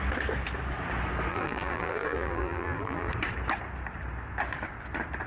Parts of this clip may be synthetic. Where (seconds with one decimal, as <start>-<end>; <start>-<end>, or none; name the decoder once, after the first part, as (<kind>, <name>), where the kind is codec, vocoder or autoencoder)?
1.3-3.1 (vocoder, BigVGAN v2)